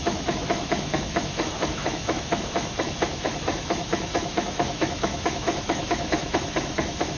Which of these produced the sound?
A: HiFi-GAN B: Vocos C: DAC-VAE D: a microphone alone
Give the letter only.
C